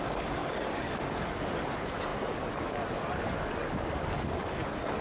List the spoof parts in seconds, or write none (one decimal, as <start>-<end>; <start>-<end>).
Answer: 0.4-0.9; 3.6-4.6

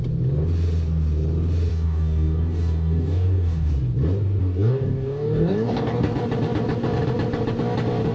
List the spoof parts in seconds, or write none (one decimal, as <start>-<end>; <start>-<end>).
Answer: 1.7-3.7; 4.4-6.2

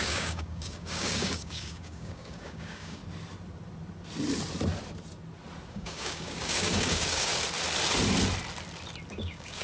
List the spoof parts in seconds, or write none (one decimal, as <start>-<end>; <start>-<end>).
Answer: 0.0-3.0; 5.7-7.3; 9.1-9.6

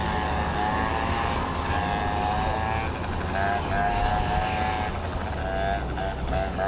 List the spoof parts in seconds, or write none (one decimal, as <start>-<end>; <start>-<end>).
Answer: 0.0-1.9; 3.5-4.1; 4.9-5.4; 6.0-6.7

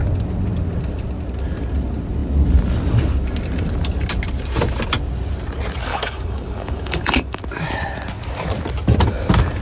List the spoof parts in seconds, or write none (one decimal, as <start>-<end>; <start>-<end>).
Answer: 5.9-7.4

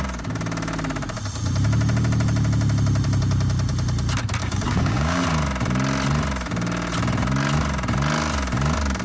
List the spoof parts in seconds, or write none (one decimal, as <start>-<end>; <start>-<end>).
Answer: 4.4-5.2

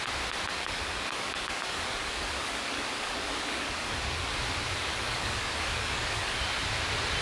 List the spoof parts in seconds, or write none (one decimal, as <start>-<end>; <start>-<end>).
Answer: 0.5-4.3; 4.9-6.4

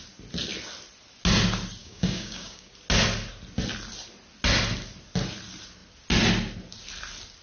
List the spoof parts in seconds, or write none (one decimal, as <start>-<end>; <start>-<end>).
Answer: 1.8-2.7